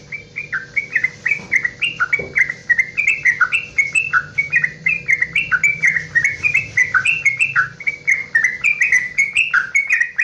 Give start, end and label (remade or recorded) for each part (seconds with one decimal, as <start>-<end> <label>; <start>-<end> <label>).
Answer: 0.0-10.2 recorded